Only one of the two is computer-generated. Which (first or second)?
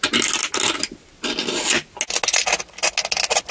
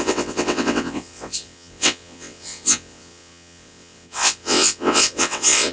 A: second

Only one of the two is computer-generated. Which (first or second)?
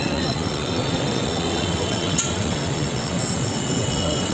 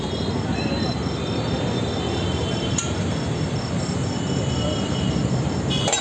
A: first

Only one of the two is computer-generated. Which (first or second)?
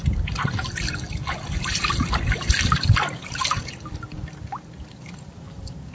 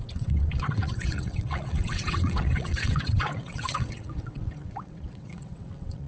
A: second